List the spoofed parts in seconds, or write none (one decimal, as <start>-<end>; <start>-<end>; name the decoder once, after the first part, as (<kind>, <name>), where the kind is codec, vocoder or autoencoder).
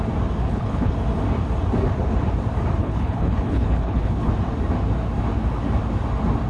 0.4-0.9 (codec, HILCodec); 2.8-4.3